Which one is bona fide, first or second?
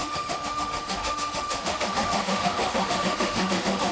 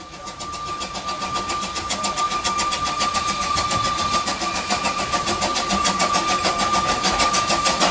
second